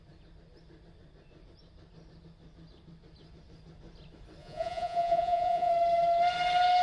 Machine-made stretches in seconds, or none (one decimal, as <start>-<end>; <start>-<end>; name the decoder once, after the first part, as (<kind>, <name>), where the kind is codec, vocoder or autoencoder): 4.4-5.7 (vocoder, Vocos)